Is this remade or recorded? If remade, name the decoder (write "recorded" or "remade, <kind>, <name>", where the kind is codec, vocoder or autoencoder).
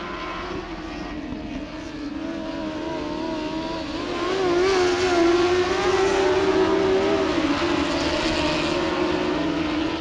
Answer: recorded